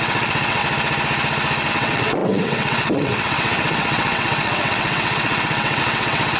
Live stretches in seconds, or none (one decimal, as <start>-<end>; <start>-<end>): 0.6-1.7